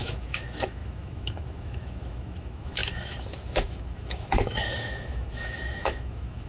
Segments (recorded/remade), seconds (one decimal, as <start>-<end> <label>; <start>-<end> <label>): 0.0-6.5 remade